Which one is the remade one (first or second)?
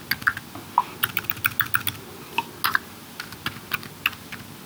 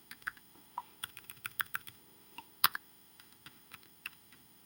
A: second